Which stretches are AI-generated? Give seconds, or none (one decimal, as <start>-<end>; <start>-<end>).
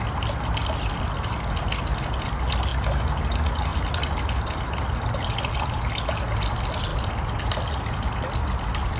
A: none